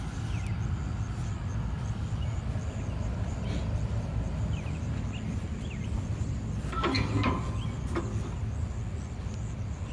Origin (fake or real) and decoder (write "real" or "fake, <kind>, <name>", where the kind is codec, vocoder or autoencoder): real